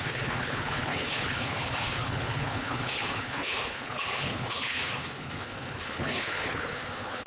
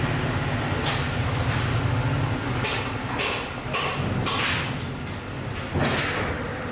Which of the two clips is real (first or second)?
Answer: second